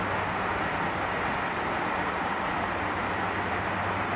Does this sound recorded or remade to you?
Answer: recorded